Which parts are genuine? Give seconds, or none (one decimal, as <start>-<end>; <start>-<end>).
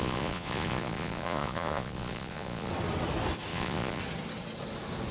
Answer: 2.7-3.5; 4.0-5.1